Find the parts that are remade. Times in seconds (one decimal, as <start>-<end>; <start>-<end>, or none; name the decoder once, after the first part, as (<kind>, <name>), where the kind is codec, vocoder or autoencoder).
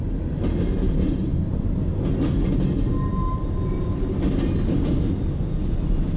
none